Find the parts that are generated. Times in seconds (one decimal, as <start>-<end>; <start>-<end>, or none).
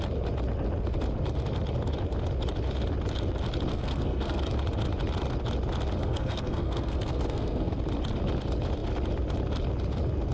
3.7-4.4; 6.0-7.8